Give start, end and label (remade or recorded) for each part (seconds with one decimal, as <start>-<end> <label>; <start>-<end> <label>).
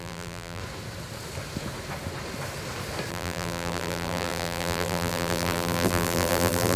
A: 0.0-0.6 remade; 0.6-3.1 recorded; 3.1-6.8 remade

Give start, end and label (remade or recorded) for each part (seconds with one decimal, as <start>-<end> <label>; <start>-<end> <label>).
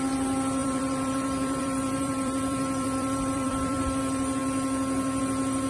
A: 0.0-0.6 recorded; 0.6-4.0 remade; 4.0-5.7 recorded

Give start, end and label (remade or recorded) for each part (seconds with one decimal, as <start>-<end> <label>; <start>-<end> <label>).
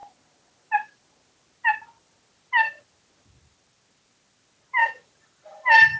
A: 0.0-4.8 recorded; 4.8-6.0 remade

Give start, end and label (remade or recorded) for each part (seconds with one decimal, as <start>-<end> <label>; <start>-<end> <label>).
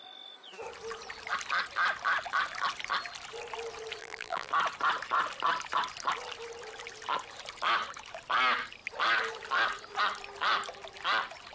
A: 0.0-4.0 recorded; 4.0-4.5 remade; 4.5-11.5 recorded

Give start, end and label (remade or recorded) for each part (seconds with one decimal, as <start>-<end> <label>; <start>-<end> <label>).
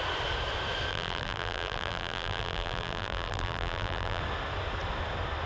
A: 0.0-0.9 recorded; 0.9-4.2 remade; 4.2-5.5 recorded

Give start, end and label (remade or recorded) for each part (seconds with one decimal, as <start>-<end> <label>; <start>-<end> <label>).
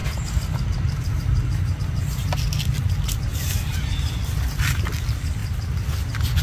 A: 0.0-6.4 recorded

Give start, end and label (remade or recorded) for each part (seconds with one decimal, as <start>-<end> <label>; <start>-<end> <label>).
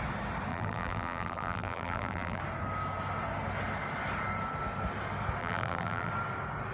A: 0.0-0.5 recorded; 0.5-2.4 remade; 2.4-5.4 recorded; 5.4-6.1 remade; 6.1-6.7 recorded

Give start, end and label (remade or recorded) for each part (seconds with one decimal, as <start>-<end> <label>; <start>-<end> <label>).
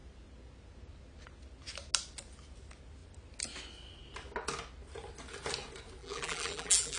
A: 0.0-6.0 recorded; 6.0-7.0 remade